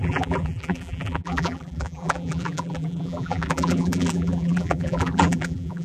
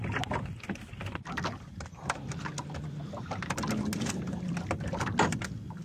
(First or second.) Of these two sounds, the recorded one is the second